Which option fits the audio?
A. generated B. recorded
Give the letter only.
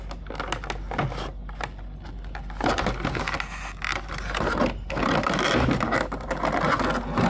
B